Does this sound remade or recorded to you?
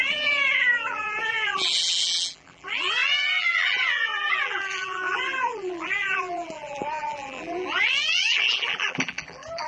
remade